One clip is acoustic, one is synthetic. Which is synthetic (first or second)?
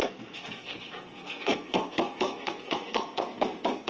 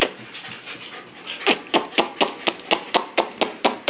first